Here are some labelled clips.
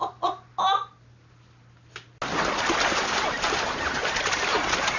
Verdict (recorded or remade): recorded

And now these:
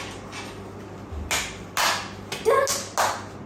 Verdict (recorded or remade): recorded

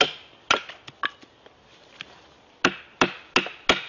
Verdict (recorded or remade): recorded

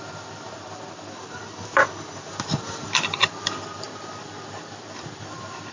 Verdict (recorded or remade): remade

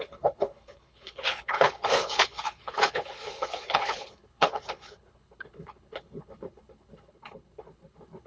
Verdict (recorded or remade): remade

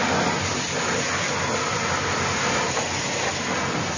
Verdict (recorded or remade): recorded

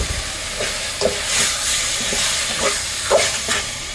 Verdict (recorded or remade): recorded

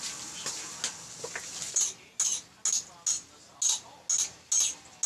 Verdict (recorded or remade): recorded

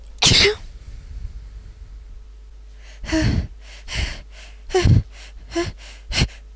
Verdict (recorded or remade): recorded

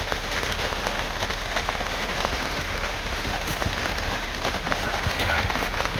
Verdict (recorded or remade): remade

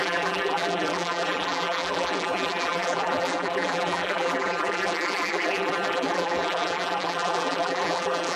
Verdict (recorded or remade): remade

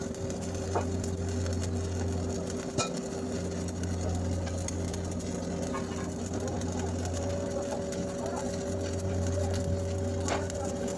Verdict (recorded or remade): recorded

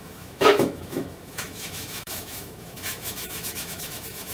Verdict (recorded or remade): remade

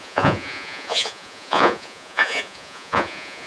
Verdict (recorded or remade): remade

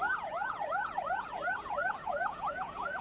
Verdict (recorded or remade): remade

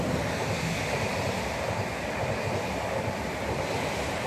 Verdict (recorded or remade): recorded